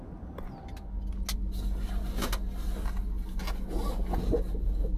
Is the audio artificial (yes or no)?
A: no